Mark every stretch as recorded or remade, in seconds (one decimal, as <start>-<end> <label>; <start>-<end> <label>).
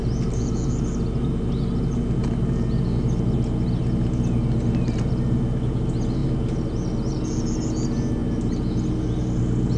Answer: 0.0-9.8 recorded